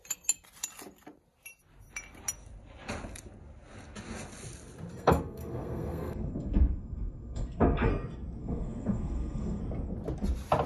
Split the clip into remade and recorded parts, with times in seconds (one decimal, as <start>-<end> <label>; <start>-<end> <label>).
0.0-4.9 recorded; 4.9-7.9 remade; 7.9-8.4 recorded; 8.4-9.6 remade; 9.6-10.7 recorded